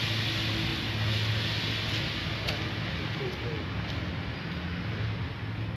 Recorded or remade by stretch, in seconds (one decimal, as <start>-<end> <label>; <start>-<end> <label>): 0.0-5.8 recorded